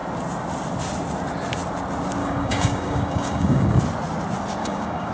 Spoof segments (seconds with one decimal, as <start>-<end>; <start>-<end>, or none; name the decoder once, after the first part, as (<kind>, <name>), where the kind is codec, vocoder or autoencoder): 2.2-3.8 (codec, DAC); 4.6-5.1